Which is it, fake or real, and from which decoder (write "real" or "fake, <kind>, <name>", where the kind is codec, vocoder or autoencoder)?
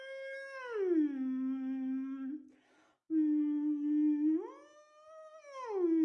real